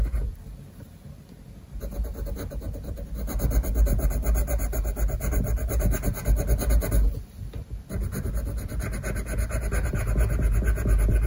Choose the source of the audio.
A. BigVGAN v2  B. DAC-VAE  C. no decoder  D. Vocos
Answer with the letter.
C